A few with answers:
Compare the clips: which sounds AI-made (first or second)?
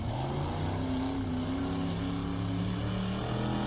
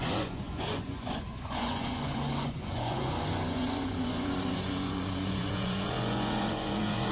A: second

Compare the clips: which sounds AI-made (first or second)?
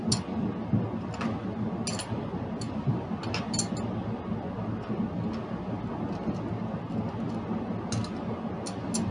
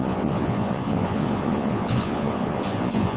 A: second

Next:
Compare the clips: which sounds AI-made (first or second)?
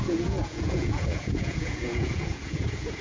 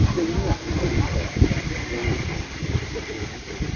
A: first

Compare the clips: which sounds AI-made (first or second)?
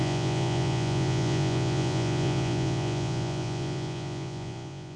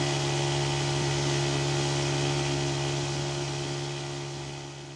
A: first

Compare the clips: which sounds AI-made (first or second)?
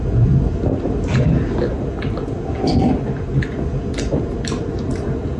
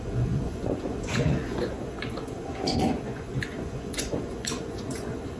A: second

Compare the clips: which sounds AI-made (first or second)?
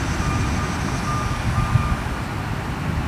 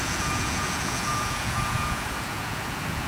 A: second